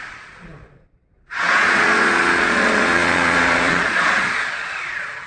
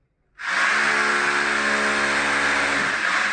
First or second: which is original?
second